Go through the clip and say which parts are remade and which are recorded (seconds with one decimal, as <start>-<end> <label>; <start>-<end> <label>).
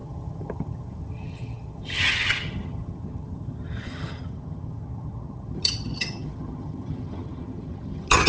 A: 0.0-8.3 remade